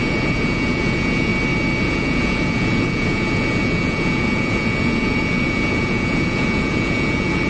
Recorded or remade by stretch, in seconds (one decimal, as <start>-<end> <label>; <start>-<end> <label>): 0.0-1.3 remade; 1.3-1.8 recorded; 1.8-7.5 remade